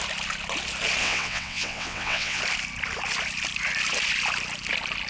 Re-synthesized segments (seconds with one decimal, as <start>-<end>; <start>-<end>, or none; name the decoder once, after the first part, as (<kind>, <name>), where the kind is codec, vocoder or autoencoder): 1.0-2.4 (vocoder, WaveNeXt)